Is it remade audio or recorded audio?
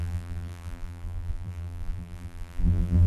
remade